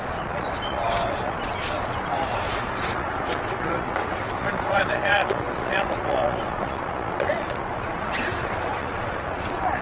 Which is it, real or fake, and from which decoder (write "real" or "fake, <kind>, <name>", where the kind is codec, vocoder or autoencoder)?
fake, vocoder, Vocos